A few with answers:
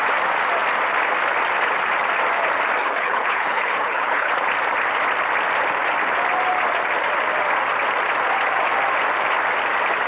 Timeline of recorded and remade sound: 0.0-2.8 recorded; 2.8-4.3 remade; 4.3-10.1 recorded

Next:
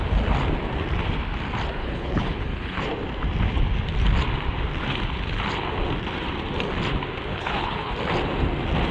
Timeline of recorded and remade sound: 0.0-1.8 recorded; 1.8-2.8 remade; 2.8-7.3 recorded; 7.3-7.9 remade; 7.9-8.9 recorded

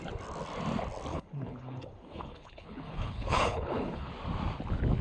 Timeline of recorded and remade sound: 0.0-1.1 recorded; 1.1-4.1 remade; 4.1-5.0 recorded

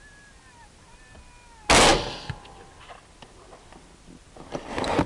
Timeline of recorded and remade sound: 0.0-5.1 recorded